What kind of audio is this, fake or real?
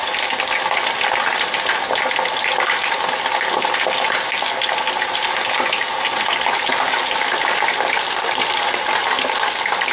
real